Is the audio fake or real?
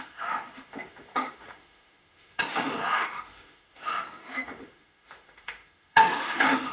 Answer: fake